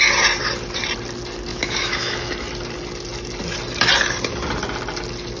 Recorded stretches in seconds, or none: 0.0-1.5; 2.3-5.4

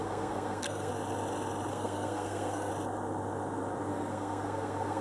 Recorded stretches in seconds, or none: 0.9-1.7; 2.7-3.9